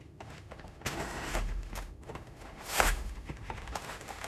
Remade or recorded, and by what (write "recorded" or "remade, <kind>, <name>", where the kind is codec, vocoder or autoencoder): remade, autoencoder, DAC-VAE